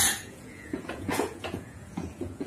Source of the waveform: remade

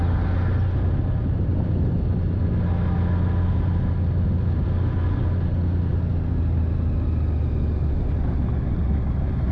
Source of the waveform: recorded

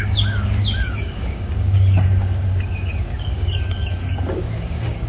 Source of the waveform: remade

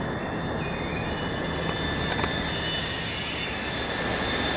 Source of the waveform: recorded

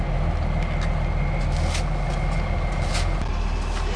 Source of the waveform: recorded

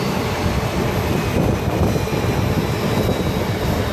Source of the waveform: recorded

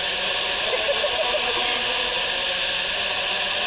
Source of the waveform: recorded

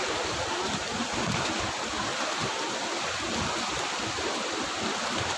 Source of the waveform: recorded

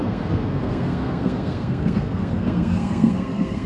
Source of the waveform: remade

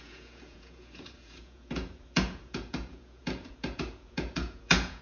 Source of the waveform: remade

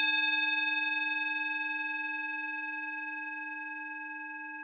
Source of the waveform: recorded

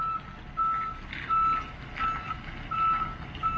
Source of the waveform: recorded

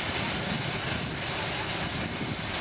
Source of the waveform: recorded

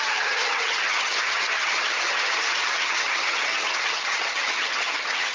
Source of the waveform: remade